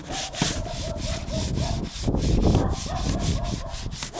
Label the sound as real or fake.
real